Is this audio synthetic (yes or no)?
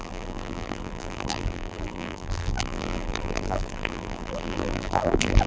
yes